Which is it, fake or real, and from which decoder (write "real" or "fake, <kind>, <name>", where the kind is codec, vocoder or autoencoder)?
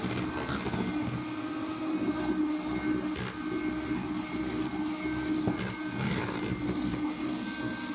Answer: real